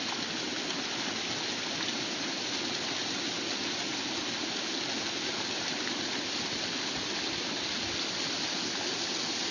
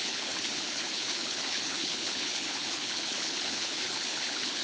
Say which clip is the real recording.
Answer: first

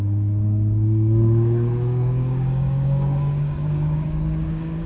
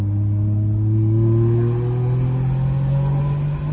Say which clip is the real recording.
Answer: second